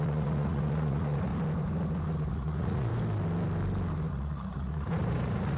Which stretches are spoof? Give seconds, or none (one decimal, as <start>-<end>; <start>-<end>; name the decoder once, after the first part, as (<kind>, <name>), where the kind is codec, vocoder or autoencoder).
0.0-1.3 (vocoder, Vocos); 2.3-2.9; 4.1-5.6